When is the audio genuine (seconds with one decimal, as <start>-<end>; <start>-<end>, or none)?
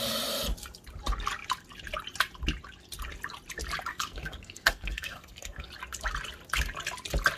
0.0-3.9; 5.7-7.4